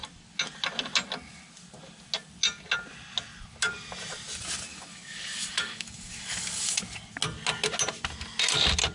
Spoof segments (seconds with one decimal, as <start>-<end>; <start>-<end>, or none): 4.7-6.8